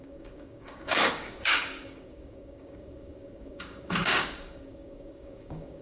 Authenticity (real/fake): fake